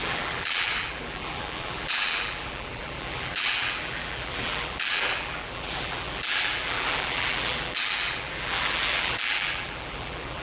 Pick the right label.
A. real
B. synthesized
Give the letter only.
B